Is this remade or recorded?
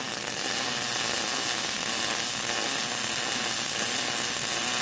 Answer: recorded